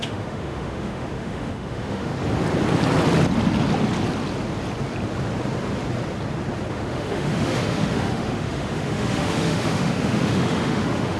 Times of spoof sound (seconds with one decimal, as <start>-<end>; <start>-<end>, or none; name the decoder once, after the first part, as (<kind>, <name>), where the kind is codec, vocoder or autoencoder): 0.0-2.1 (autoencoder, DAC-VAE); 6.7-11.2